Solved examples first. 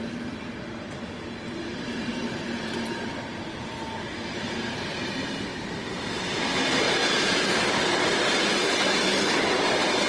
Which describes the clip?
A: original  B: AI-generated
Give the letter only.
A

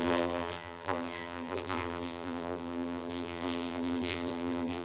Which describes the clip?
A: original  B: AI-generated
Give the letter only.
B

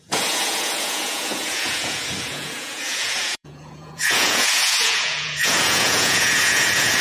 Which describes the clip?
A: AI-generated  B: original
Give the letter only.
A